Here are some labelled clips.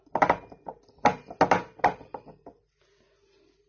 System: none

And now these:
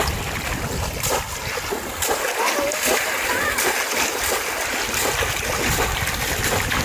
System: none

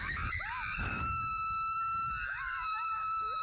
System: vocoder, BigVGAN v2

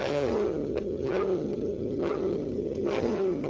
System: vocoder, HiFi-GAN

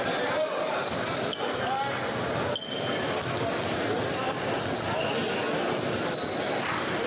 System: none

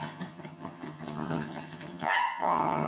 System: vocoder, HiFi-GAN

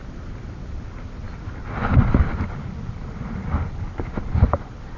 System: none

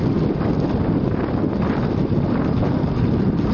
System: none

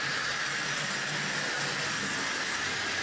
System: none